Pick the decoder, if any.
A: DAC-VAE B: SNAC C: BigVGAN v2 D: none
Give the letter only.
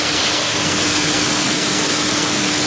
B